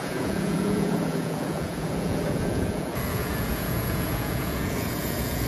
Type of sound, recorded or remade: remade